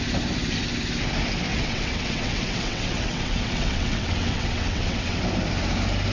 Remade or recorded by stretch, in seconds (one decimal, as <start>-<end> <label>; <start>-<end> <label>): 0.0-1.5 recorded; 1.5-5.2 remade; 5.2-6.1 recorded